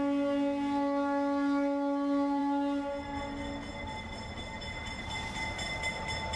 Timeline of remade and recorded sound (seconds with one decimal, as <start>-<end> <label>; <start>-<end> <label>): 0.0-3.7 recorded; 3.7-5.4 remade; 5.4-6.4 recorded